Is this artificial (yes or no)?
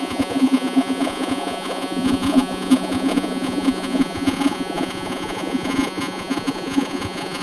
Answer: yes